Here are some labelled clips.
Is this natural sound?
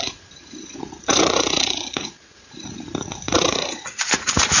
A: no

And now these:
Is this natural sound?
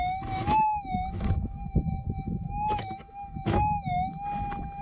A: no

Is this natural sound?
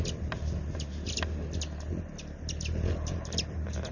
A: yes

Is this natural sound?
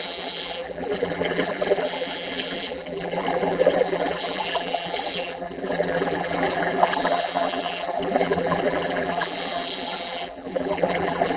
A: no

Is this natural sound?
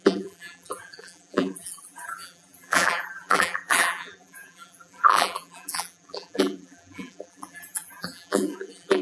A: no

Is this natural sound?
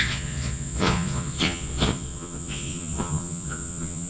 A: no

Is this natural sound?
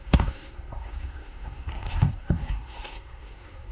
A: no